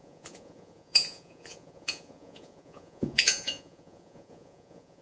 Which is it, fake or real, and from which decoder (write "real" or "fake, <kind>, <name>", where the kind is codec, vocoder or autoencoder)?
fake, vocoder, Vocos